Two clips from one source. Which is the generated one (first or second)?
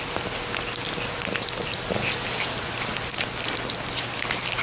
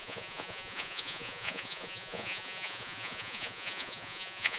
second